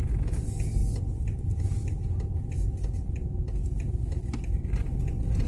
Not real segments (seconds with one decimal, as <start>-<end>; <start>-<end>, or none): none